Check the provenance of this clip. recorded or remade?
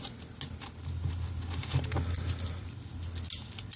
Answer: recorded